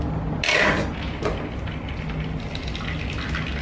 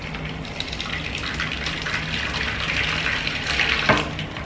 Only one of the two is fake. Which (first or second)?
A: second